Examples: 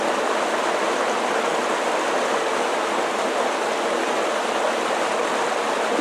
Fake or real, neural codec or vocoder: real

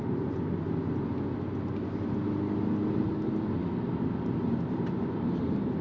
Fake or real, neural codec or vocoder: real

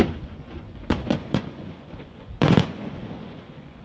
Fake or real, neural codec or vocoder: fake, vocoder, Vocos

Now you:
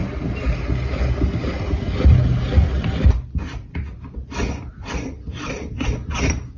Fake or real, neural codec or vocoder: real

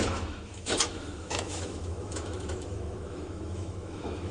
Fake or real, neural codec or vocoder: fake, autoencoder, DAC-VAE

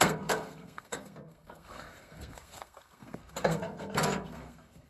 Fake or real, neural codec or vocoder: fake, codec, SNAC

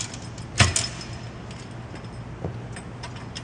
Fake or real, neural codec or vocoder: real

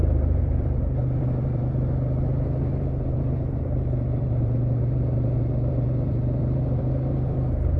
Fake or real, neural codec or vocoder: fake, vocoder, BigVGAN v2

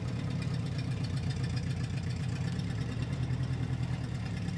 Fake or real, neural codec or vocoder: fake, vocoder, BigVGAN v2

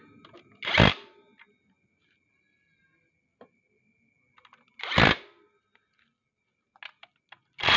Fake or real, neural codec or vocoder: real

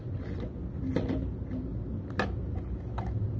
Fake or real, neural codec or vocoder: real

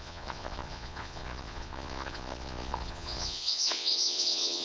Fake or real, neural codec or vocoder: fake, vocoder, Vocos